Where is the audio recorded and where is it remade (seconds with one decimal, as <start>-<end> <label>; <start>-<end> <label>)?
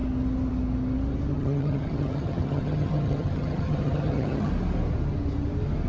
0.0-1.3 recorded; 1.3-4.5 remade; 4.5-5.9 recorded